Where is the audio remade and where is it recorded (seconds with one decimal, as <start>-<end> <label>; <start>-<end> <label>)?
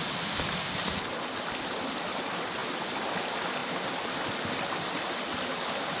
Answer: 0.0-6.0 recorded